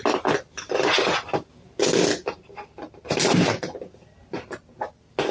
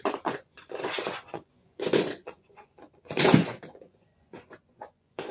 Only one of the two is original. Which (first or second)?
first